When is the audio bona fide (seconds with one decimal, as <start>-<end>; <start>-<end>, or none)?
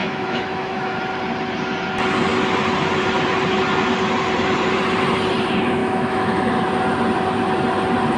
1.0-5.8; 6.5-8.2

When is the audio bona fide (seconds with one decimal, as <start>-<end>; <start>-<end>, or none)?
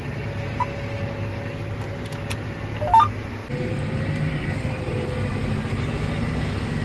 0.0-6.8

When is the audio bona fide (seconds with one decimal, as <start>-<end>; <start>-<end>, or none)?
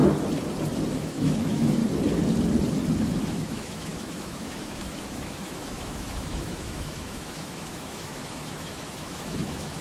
0.0-0.9; 1.8-3.0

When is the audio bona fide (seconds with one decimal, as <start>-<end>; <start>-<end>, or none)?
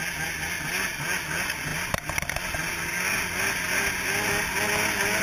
0.0-5.2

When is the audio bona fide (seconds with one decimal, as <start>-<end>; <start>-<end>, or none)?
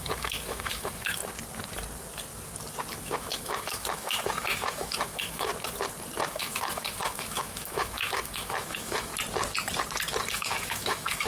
1.2-3.0; 5.5-6.3; 9.1-10.3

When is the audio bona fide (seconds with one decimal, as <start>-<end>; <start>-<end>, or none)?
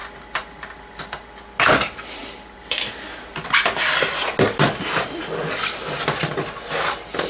0.0-7.3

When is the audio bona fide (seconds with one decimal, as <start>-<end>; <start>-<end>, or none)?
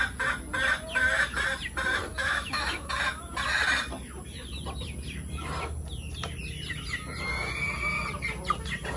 0.0-2.1; 2.9-9.0